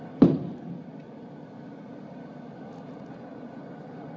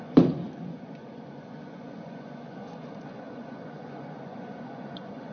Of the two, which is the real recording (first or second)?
first